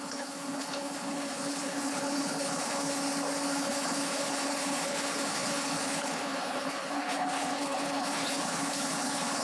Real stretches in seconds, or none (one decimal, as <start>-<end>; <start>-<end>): 3.0-3.6